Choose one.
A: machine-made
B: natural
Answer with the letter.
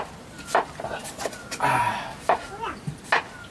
B